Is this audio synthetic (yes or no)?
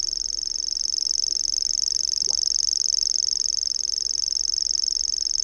no